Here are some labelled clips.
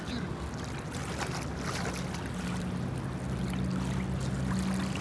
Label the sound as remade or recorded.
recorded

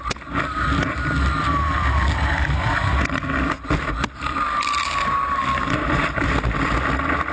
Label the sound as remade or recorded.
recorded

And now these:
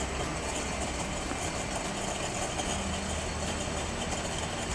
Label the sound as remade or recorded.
recorded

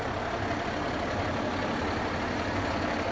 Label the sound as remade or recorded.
recorded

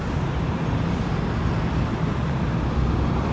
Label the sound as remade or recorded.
recorded